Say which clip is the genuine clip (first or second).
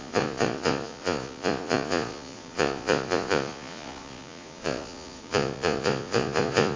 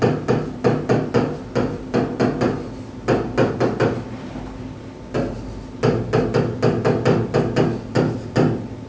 second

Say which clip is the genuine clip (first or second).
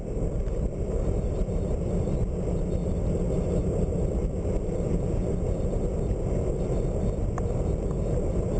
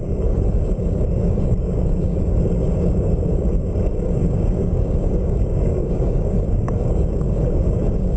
first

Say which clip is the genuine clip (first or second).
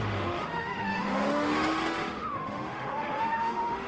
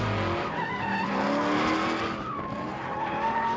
second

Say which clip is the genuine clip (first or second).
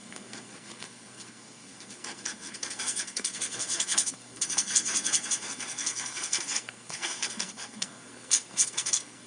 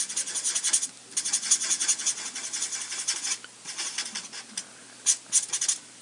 second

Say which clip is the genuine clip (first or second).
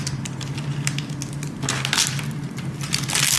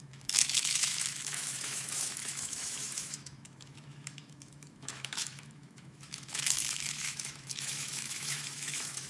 first